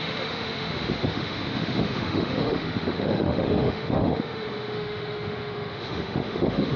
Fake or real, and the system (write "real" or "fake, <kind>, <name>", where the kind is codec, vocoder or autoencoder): fake, autoencoder, DAC-VAE